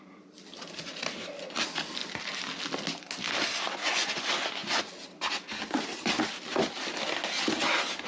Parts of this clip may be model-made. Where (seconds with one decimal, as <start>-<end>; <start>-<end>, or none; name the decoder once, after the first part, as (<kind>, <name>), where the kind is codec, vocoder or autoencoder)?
3.8-4.8 (vocoder, Vocos)